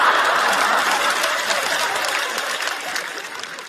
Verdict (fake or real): real